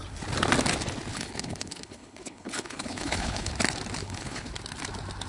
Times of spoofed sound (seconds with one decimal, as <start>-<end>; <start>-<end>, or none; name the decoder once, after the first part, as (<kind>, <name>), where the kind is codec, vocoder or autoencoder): 1.1-3.5 (codec, HILCodec); 4.0-4.5